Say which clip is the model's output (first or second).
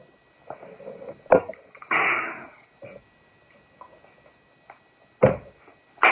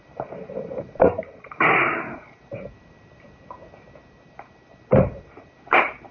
second